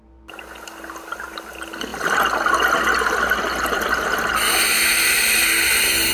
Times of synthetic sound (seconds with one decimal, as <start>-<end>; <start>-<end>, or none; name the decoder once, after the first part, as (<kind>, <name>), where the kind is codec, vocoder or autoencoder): none